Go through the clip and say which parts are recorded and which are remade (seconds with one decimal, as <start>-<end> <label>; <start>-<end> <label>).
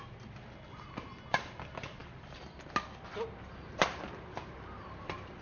0.0-5.4 recorded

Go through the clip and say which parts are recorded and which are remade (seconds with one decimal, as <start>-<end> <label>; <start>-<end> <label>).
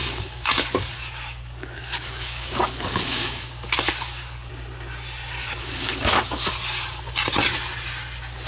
0.0-4.5 remade; 4.5-5.4 recorded; 5.4-6.5 remade; 6.5-8.5 recorded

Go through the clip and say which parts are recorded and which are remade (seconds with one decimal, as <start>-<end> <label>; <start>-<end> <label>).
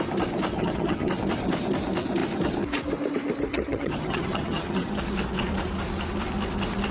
0.0-0.5 recorded; 0.5-1.1 remade; 1.1-3.5 recorded; 3.5-5.0 remade; 5.0-6.9 recorded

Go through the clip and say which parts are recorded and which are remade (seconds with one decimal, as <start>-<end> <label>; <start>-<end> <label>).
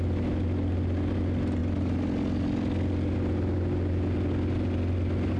0.0-5.4 recorded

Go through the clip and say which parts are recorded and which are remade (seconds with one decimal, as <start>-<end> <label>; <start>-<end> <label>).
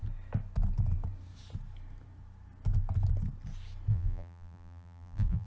0.0-3.9 recorded; 3.9-5.5 remade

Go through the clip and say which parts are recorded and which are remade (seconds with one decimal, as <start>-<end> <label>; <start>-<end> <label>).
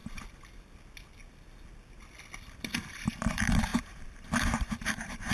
0.0-3.2 recorded; 3.2-5.3 remade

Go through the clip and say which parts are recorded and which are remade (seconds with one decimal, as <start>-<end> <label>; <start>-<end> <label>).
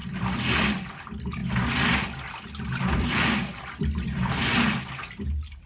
0.0-5.7 recorded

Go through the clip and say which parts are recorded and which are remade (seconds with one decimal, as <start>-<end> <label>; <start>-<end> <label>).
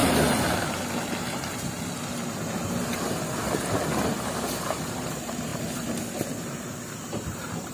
0.0-4.6 recorded; 4.6-5.5 remade; 5.5-7.0 recorded; 7.0-7.7 remade